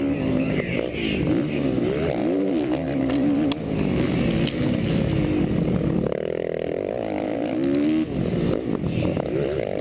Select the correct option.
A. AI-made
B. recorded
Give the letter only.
B